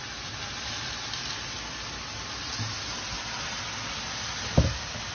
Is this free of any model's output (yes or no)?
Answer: yes